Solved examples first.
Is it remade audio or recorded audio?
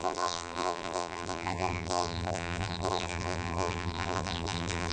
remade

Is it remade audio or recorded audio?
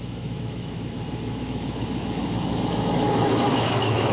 remade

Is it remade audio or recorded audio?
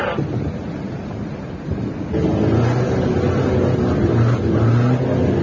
recorded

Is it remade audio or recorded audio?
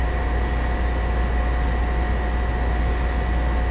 recorded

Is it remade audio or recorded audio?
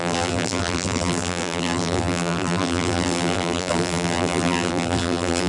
remade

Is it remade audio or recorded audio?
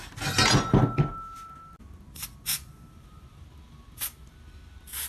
recorded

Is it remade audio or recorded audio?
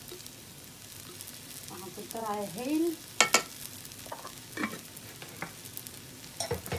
recorded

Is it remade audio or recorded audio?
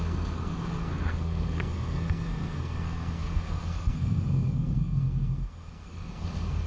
remade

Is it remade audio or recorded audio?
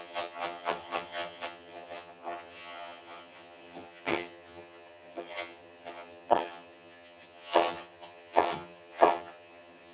remade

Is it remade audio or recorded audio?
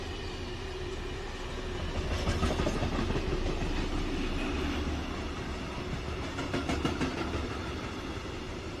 recorded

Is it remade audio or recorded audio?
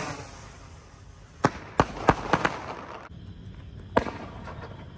recorded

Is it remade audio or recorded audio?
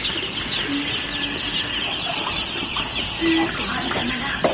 recorded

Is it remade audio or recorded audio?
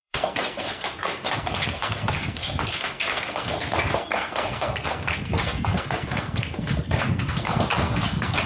remade